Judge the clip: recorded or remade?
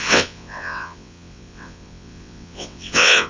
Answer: remade